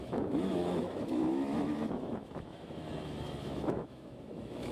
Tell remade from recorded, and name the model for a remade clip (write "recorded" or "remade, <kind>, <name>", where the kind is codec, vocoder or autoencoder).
remade, autoencoder, DAC-VAE